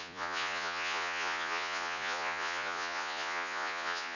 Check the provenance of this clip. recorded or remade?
remade